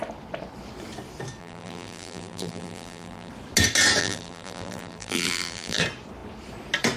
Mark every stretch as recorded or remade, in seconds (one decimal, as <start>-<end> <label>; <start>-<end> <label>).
0.0-1.4 recorded; 1.4-3.3 remade; 3.3-4.0 recorded; 4.0-5.8 remade; 5.8-7.0 recorded